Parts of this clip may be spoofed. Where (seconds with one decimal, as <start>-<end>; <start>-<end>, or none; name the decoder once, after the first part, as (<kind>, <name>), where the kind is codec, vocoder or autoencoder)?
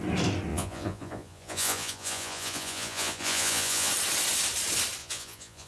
0.5-3.9 (vocoder, Vocos); 5.0-5.7